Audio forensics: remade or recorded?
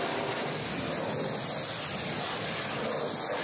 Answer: recorded